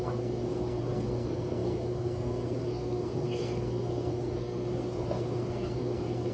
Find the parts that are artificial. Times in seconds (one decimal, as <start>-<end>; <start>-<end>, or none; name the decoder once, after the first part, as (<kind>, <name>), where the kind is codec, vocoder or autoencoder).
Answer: 0.0-6.3 (codec, SNAC)